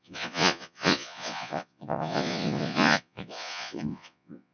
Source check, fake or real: fake